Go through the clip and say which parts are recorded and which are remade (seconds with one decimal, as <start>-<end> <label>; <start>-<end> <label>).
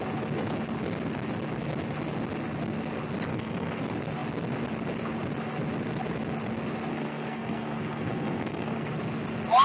0.0-3.3 recorded; 3.3-3.8 remade; 3.8-6.9 recorded; 6.9-8.9 remade; 8.9-9.6 recorded